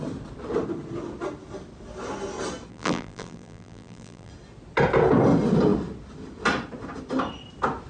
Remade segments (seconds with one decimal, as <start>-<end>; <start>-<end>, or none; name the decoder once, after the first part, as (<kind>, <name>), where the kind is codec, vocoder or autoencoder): 2.7-4.3 (vocoder, BigVGAN v2)